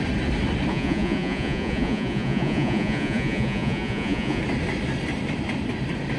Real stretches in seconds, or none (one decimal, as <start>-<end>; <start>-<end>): 0.0-0.7; 4.4-6.2